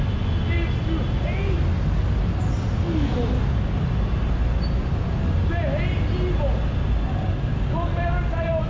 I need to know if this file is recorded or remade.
recorded